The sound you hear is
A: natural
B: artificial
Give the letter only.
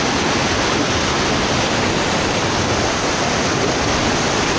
A